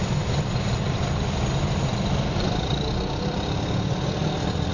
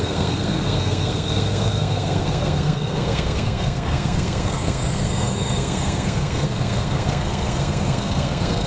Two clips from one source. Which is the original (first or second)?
first